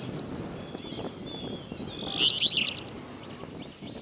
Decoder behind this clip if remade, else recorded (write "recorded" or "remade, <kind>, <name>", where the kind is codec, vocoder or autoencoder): recorded